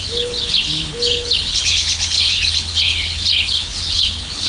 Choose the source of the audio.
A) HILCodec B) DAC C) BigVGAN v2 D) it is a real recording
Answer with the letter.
A